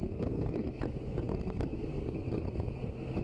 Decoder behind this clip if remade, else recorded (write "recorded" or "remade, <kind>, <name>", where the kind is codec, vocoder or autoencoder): remade, codec, SNAC